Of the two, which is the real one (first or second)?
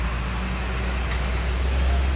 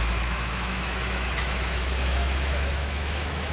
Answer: first